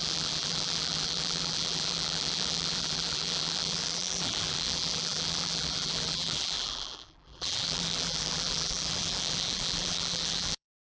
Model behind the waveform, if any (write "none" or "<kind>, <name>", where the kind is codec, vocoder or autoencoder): vocoder, BigVGAN v2